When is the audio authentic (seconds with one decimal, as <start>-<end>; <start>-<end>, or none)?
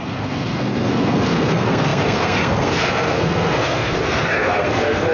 none